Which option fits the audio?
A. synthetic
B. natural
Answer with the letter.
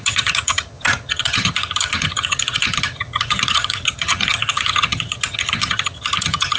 A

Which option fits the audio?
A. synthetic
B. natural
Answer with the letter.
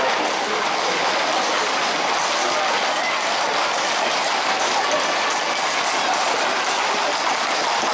B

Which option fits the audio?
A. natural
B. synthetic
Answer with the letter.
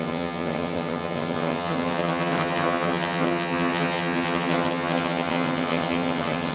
B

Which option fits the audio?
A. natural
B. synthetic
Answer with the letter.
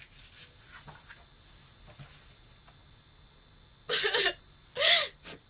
A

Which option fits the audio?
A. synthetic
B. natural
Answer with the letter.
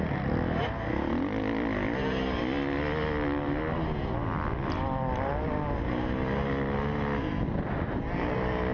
B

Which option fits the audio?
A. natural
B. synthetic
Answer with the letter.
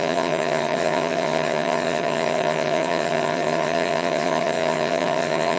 B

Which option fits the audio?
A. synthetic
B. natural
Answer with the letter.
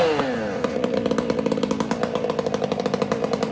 B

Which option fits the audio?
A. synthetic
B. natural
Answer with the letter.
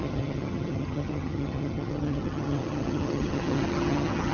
A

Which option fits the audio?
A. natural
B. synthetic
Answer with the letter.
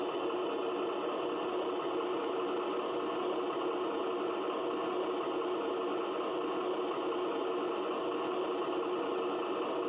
A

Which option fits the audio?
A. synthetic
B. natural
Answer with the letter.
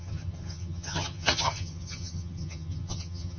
A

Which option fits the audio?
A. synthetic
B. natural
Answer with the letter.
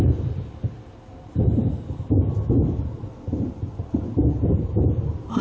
B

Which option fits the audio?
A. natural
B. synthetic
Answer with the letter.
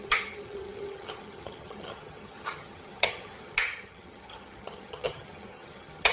B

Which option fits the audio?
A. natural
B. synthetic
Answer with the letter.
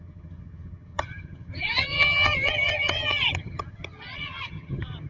B